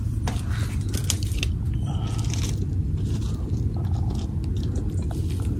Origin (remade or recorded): recorded